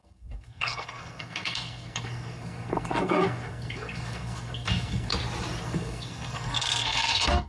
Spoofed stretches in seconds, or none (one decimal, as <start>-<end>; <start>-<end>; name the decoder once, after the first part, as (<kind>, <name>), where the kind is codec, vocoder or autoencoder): 0.0-5.1 (codec, SNAC); 5.6-7.5